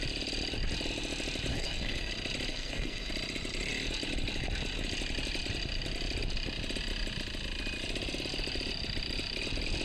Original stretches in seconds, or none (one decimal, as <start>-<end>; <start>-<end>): 0.0-1.5; 2.1-2.5; 3.1-9.8